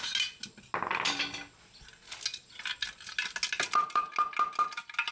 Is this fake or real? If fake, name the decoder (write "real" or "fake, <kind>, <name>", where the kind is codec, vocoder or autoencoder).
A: real